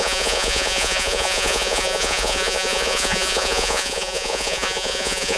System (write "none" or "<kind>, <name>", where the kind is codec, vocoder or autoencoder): vocoder, Vocos